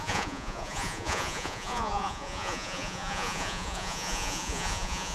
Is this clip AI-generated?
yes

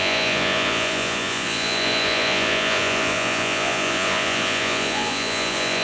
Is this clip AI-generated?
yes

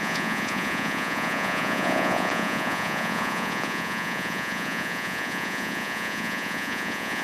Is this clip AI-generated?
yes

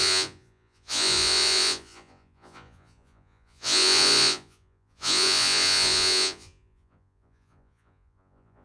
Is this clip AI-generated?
yes